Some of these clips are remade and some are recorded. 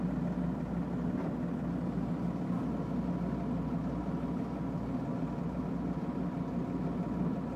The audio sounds recorded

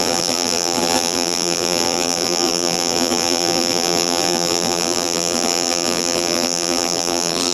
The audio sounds remade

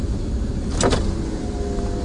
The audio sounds recorded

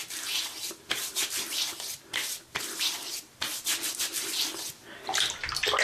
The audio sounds recorded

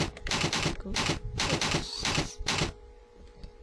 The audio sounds remade